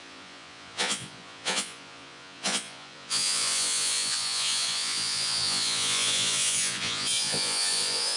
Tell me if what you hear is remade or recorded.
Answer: remade